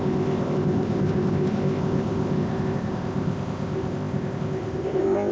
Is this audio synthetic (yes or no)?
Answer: yes